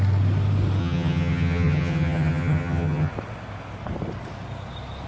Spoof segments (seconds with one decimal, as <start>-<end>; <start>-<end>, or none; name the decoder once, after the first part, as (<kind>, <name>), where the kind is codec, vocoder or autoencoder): 0.8-3.1 (vocoder, HiFi-GAN)